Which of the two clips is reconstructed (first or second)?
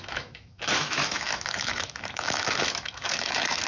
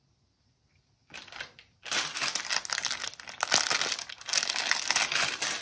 first